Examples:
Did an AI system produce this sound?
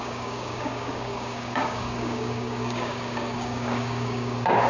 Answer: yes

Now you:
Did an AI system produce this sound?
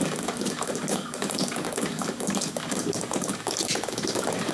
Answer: yes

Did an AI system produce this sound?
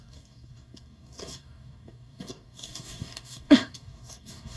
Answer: yes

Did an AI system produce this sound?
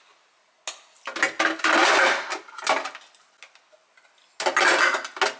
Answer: no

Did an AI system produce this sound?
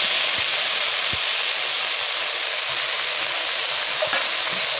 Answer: no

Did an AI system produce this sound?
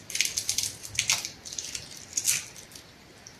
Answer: no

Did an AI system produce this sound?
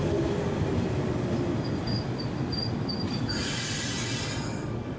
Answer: no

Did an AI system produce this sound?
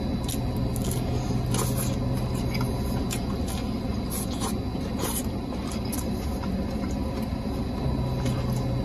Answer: no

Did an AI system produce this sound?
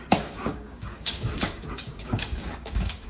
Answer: yes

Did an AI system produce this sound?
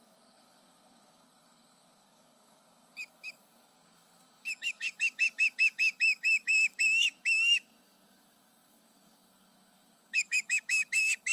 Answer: yes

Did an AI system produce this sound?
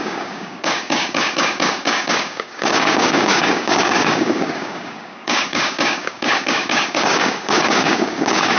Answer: yes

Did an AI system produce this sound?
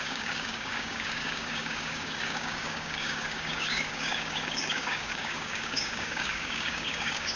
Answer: yes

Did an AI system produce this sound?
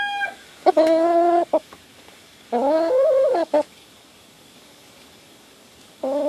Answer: yes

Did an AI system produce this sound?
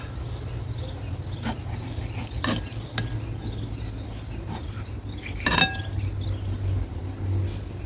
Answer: no